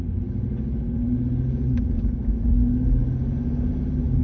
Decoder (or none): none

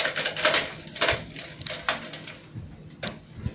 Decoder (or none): none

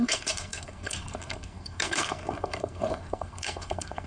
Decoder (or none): codec, SNAC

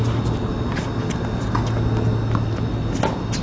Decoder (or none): none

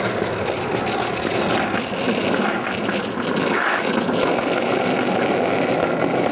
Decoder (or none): none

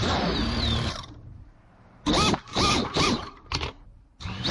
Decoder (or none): vocoder, BigVGAN v2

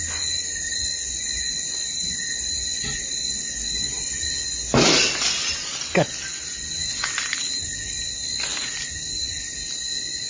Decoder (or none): none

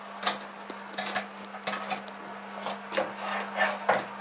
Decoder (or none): none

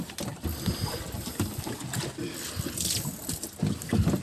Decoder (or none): none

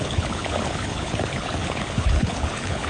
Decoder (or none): codec, HILCodec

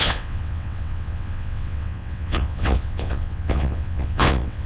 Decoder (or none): vocoder, WaveNeXt